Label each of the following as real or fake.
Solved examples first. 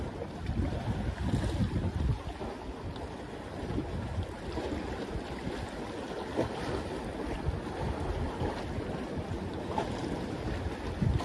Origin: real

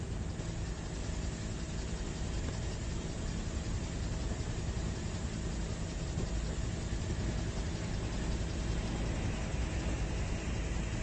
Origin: real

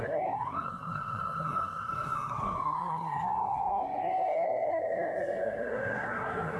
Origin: fake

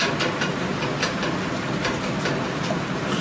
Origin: real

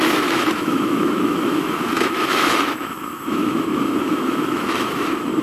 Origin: fake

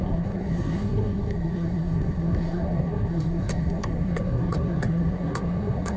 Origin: fake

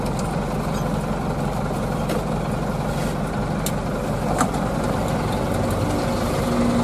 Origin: real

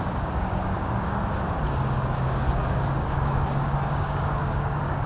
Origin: fake